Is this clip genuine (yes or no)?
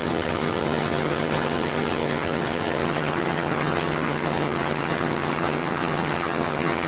no